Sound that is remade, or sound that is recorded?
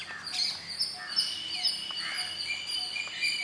recorded